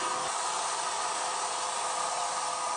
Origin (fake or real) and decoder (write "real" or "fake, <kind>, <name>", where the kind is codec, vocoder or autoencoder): real